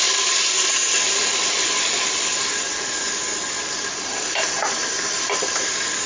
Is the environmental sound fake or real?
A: real